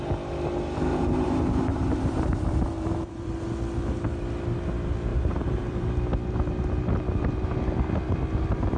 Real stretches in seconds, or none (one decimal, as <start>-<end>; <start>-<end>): 0.0-0.9; 3.4-5.1; 5.9-8.8